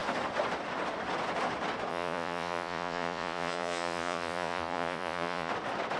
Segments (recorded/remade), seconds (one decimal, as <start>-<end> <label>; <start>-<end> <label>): 0.0-1.9 recorded; 1.9-5.5 remade; 5.5-6.0 recorded